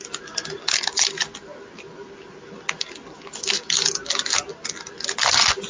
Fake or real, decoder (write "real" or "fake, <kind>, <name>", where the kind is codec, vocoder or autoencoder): real